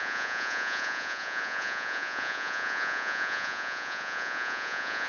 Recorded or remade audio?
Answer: remade